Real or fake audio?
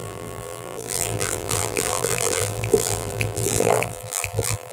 fake